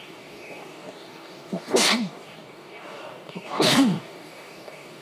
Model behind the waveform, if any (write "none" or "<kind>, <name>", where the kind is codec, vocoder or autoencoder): codec, DAC